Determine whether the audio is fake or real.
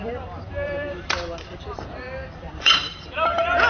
fake